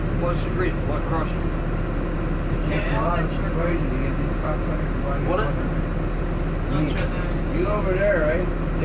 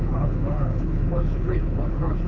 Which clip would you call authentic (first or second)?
first